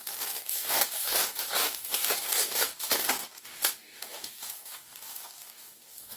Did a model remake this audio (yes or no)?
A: yes